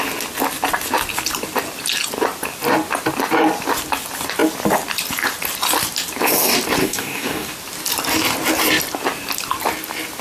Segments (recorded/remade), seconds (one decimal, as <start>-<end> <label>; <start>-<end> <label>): 0.0-6.8 recorded; 6.8-7.5 remade; 7.5-10.2 recorded